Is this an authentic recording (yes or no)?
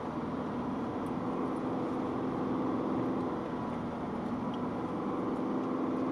yes